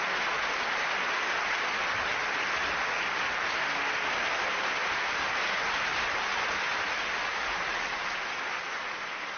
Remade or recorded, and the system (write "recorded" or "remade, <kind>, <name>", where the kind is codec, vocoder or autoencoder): recorded